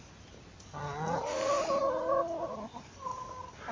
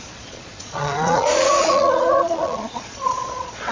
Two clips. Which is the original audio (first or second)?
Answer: first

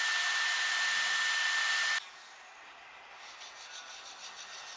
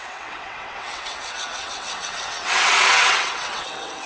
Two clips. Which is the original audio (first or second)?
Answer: first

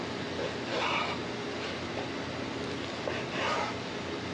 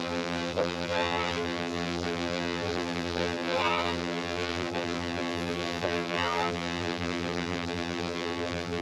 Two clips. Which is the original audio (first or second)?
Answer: first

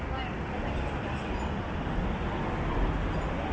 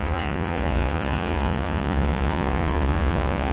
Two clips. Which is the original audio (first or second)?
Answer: first